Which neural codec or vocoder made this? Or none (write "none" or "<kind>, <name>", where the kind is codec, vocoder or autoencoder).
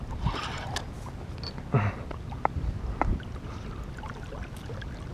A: none